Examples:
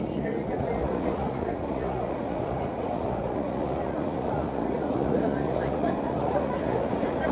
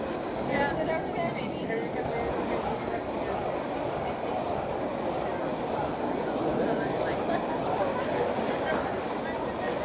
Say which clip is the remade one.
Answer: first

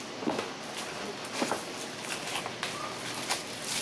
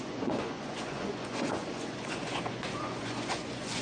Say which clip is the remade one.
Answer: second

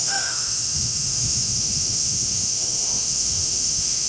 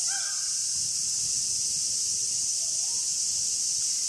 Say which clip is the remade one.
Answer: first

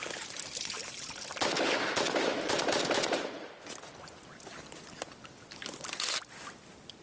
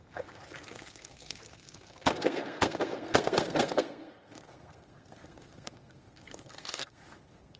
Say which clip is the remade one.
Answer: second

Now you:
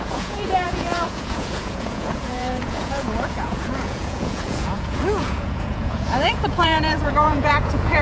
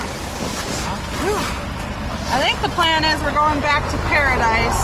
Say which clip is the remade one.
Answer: first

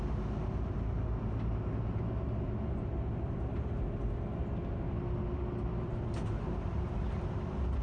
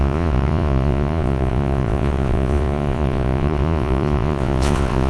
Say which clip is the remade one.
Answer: second